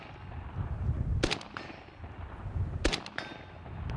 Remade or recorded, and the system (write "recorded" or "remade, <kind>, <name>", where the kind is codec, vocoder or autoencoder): recorded